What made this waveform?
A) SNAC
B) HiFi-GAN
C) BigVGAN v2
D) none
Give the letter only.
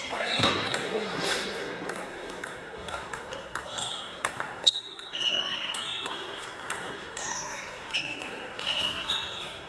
A